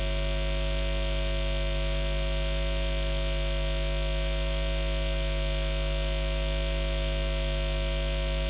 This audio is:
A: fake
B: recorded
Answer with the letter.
B